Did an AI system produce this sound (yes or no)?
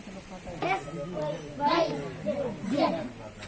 no